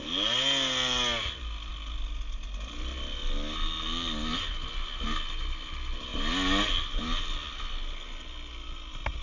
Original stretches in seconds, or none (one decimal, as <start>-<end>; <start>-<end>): 0.0-9.2